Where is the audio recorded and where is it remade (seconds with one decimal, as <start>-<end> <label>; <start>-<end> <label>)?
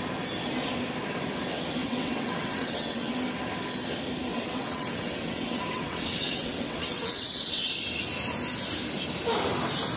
0.0-1.8 recorded; 1.8-3.1 remade; 3.1-4.3 recorded; 4.3-7.7 remade; 7.7-10.0 recorded